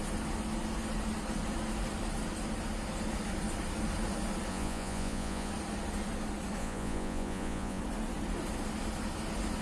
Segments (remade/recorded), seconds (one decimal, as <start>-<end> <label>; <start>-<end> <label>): 0.0-4.5 recorded; 4.5-5.5 remade; 5.5-6.6 recorded; 6.6-7.8 remade; 7.8-9.6 recorded